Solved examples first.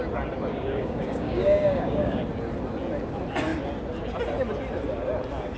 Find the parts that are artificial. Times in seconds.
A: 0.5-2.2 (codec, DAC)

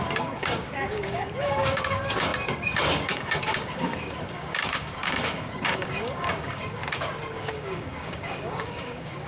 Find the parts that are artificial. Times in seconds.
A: 0.0-6.8 (codec, DAC); 7.3-9.3

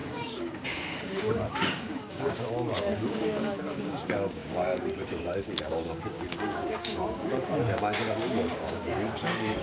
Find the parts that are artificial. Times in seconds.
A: 0.0-9.6 (codec, DAC)

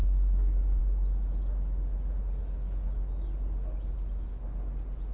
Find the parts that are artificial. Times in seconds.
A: 0.0-0.8 (codec, DAC)